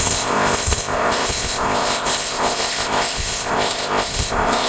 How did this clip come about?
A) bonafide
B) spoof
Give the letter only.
B